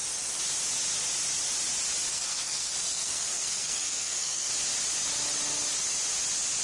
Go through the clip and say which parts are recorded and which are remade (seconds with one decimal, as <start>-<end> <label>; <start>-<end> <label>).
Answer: 0.0-2.1 recorded; 2.1-4.5 remade; 4.5-6.6 recorded